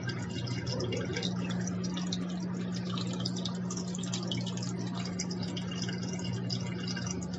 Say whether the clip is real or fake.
real